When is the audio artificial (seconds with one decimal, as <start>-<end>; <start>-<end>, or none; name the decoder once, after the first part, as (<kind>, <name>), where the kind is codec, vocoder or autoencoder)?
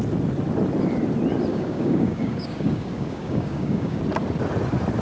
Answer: 1.5-4.0 (codec, DAC)